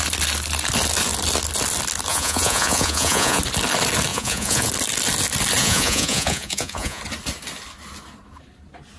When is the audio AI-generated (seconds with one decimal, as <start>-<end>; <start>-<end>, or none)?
2.1-3.4; 4.1-4.7; 5.6-7.0